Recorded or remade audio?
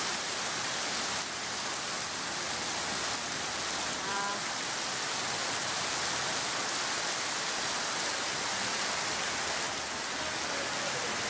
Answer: recorded